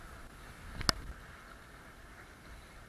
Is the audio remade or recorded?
recorded